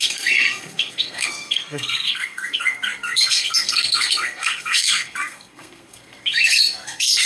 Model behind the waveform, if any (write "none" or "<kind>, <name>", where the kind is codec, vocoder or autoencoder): codec, SNAC